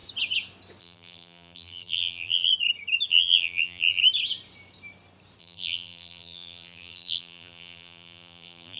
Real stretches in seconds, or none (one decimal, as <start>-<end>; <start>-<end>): 0.0-0.8; 2.5-3.1; 4.0-5.4